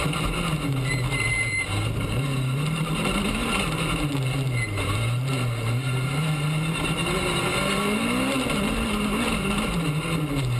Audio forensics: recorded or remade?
recorded